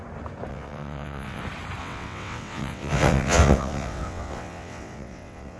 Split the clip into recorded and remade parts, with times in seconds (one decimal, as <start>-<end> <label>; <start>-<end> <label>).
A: 0.0-0.5 recorded; 0.5-1.4 remade; 1.4-1.8 recorded; 1.8-5.6 remade